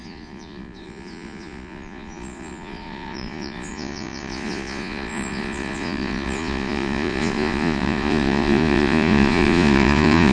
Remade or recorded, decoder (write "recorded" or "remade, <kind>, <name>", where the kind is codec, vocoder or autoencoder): remade, vocoder, Vocos